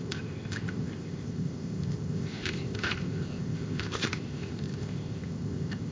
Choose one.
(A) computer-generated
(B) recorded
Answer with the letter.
A